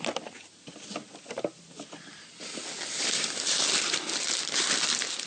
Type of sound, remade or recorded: recorded